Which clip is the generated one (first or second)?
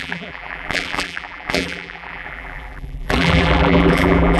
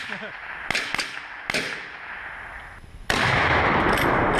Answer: first